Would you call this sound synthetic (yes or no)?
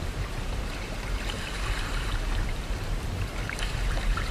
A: yes